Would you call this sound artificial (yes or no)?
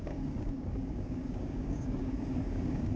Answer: yes